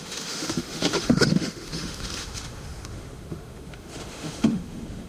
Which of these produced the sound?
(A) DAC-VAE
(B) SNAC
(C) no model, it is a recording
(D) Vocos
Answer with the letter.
A